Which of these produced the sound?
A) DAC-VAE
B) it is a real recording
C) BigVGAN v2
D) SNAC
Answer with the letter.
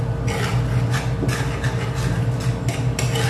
B